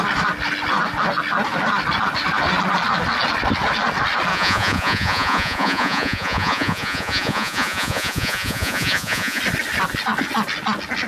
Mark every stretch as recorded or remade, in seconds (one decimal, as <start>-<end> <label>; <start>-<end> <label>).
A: 0.0-4.3 recorded; 4.3-9.4 remade; 9.4-11.1 recorded